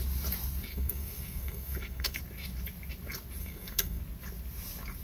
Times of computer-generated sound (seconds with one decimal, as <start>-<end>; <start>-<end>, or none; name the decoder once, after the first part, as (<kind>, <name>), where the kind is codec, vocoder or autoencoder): 0.7-2.2 (codec, SNAC); 3.4-4.0